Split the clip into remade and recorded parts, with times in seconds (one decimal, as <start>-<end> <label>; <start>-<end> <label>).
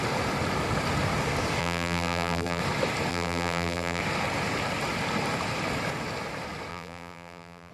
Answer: 0.0-1.6 recorded; 1.6-2.6 remade; 2.6-3.1 recorded; 3.1-4.0 remade; 4.0-6.7 recorded; 6.7-7.7 remade